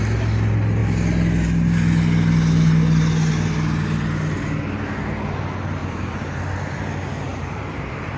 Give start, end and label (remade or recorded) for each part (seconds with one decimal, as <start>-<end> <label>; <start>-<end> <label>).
0.0-5.8 recorded; 5.8-6.4 remade; 6.4-7.3 recorded; 7.3-8.2 remade